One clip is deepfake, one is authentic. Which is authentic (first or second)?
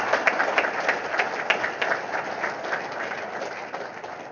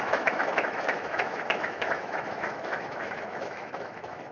first